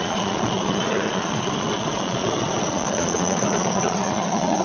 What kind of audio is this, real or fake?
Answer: fake